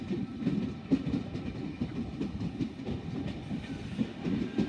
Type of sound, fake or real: real